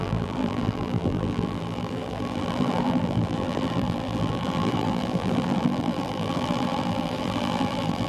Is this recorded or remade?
remade